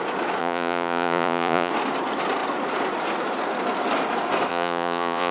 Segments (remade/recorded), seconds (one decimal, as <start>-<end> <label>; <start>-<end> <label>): 0.0-0.4 recorded; 0.4-1.7 remade; 1.7-4.5 recorded; 4.5-5.3 remade